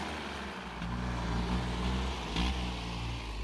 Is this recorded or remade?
recorded